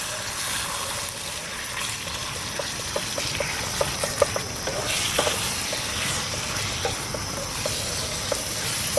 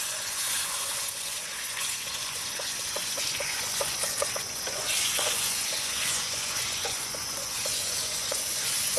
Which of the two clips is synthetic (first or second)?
second